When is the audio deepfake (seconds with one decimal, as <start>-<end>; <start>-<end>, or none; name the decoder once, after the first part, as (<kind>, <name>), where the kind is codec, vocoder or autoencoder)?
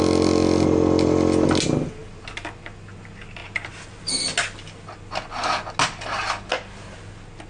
none